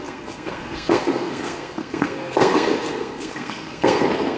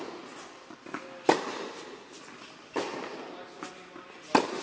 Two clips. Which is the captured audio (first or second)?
second